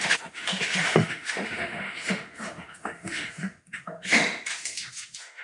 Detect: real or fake fake